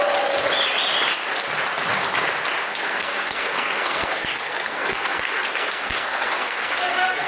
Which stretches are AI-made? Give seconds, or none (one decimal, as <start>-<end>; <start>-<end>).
2.7-7.3